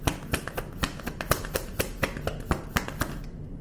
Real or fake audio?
real